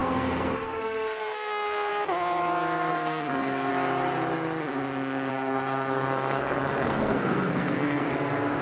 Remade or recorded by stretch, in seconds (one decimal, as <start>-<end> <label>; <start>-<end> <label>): 0.0-1.9 remade; 1.9-2.9 recorded; 2.9-3.7 remade; 3.7-5.3 recorded; 5.3-8.1 remade; 8.1-8.6 recorded